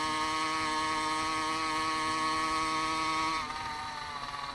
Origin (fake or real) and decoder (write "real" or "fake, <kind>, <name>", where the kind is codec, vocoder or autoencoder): real